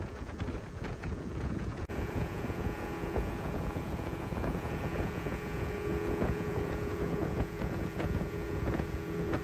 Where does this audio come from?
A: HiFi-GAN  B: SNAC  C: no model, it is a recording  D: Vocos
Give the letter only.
D